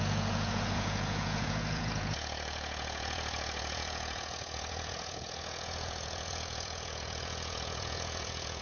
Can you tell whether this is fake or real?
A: fake